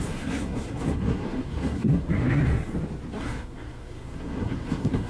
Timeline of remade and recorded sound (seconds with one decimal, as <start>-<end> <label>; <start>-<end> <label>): 0.0-2.4 remade; 2.4-3.2 recorded; 3.2-5.1 remade